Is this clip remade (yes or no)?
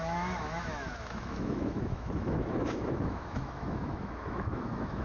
yes